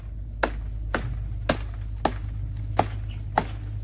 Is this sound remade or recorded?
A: recorded